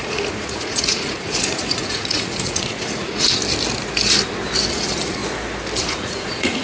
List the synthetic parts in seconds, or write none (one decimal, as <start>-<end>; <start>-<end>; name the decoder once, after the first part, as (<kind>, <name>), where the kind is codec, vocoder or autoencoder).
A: 0.0-3.4 (vocoder, Vocos); 4.7-5.2; 5.8-6.6